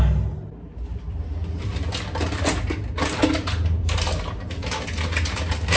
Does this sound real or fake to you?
real